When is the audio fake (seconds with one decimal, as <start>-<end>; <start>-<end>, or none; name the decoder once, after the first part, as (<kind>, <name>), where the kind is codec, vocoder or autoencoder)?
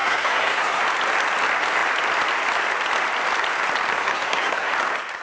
0.0-0.8 (codec, SNAC); 3.9-4.7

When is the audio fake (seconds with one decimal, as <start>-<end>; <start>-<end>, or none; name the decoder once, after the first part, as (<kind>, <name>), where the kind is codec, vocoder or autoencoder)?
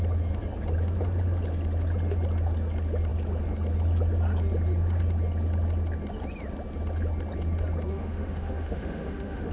7.9-9.5 (autoencoder, DAC-VAE)